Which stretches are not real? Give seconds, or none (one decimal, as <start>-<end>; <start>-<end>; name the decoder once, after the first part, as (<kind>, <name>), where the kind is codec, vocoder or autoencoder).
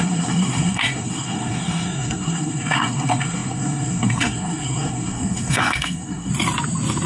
0.0-6.3 (codec, SNAC)